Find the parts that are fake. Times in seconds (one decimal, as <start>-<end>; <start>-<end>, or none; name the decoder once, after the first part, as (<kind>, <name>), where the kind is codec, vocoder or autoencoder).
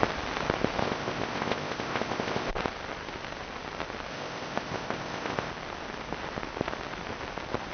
0.8-2.5 (codec, ZipCodec); 4.1-5.5